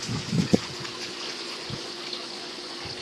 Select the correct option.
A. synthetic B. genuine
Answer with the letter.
A